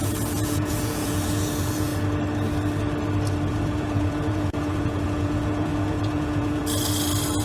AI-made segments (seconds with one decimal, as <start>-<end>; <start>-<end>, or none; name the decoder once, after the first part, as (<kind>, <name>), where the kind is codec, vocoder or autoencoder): 0.0-1.9 (vocoder, Vocos); 3.5-6.6